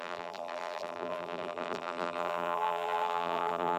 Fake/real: fake